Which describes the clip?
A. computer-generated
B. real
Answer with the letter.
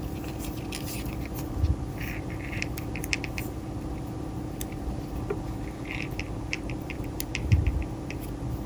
B